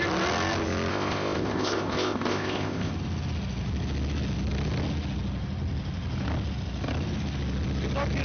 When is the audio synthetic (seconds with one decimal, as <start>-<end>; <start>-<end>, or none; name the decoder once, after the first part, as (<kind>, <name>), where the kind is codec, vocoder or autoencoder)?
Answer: 0.9-2.9 (codec, ZipCodec)